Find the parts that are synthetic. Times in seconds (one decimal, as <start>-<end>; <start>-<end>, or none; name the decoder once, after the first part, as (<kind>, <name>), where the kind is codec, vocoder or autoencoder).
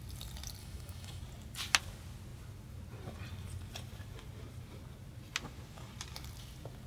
0.6-1.2 (autoencoder, DAC-VAE)